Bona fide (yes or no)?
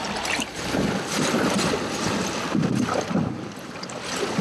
yes